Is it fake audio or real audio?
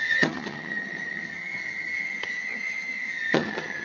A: fake